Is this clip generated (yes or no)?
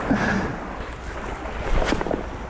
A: no